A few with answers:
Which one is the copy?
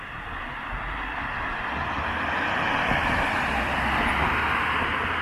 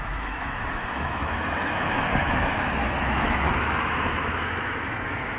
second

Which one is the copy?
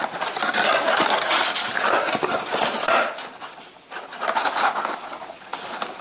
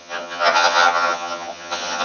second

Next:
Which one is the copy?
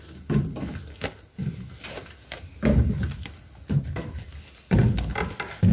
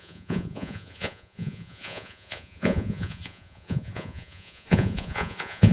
second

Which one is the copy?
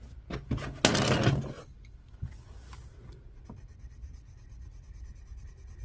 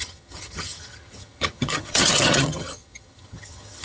second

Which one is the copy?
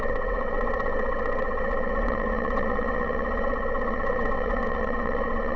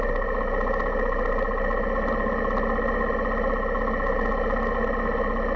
first